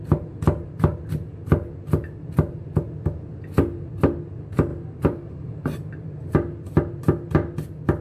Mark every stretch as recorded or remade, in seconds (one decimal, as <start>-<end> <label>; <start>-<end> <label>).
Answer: 0.0-4.7 recorded; 4.7-5.9 remade; 5.9-8.0 recorded